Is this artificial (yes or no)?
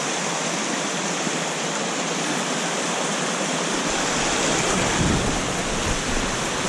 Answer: no